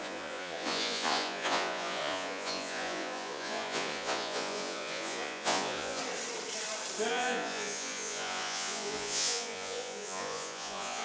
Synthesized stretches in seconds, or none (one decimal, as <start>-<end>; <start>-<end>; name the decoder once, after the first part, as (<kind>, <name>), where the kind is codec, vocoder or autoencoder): 0.0-6.0 (vocoder, Vocos); 7.1-11.0